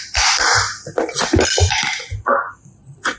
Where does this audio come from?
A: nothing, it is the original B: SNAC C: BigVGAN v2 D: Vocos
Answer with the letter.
C